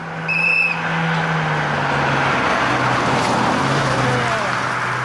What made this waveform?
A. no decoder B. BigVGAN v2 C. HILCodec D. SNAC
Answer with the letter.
A